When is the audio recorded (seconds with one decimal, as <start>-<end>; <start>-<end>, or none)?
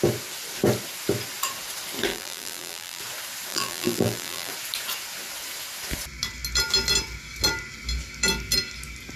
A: 0.0-2.1; 3.0-3.5; 4.5-9.2